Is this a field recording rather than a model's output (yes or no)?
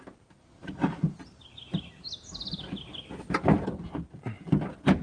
yes